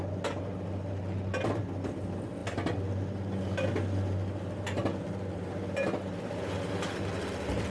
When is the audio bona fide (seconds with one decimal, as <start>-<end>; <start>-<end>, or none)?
0.0-7.7